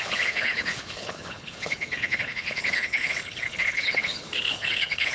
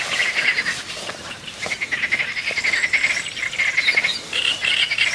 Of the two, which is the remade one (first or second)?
first